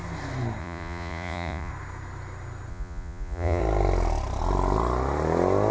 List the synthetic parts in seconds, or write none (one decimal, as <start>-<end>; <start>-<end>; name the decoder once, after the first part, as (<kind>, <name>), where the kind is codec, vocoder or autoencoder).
0.6-1.7 (vocoder, Vocos); 2.7-3.6